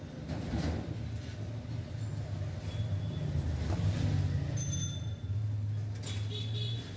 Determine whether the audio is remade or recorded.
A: recorded